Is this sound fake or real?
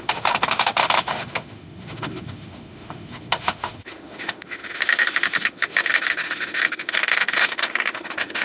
fake